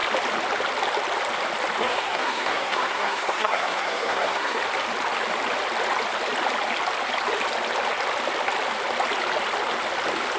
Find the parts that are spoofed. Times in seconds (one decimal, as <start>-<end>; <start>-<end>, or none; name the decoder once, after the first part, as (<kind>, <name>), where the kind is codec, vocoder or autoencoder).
1.8-4.6 (codec, SNAC)